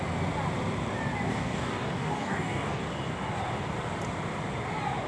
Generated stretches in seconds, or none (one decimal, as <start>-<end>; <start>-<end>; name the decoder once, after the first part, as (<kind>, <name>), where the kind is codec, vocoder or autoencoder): 1.3-2.8 (codec, DAC)